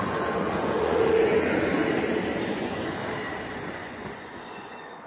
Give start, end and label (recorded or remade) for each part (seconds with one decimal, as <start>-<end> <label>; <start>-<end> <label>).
0.0-1.7 remade; 1.7-2.5 recorded; 2.5-3.0 remade; 3.0-3.5 recorded; 3.5-5.1 remade